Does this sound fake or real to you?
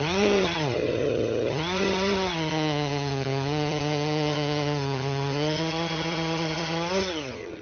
fake